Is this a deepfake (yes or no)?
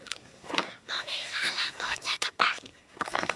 yes